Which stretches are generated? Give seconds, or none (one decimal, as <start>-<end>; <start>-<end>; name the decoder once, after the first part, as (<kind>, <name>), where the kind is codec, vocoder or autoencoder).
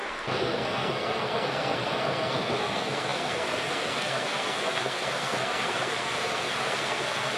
0.0-7.4 (codec, SNAC)